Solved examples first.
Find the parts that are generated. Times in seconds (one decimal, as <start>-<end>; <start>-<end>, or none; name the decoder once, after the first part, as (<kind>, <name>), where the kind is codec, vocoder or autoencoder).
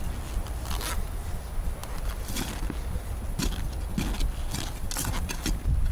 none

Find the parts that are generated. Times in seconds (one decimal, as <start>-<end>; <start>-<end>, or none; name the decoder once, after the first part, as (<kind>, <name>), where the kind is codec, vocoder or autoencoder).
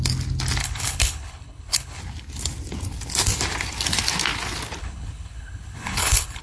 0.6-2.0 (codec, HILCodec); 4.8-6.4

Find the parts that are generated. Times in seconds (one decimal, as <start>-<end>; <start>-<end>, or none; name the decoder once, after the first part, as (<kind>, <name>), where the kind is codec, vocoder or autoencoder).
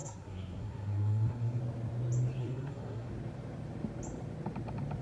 0.0-1.6 (codec, SNAC); 2.4-3.1